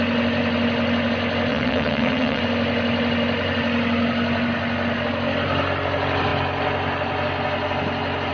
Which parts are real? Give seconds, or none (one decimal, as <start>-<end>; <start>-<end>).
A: 0.0-1.5; 2.4-8.3